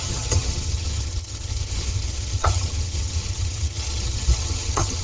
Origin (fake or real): fake